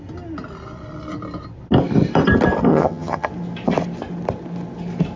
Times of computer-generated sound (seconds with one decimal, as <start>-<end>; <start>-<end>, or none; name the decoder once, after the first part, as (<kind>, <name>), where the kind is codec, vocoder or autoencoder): 2.7-3.3 (vocoder, HiFi-GAN)